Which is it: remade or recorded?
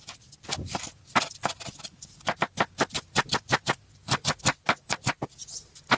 recorded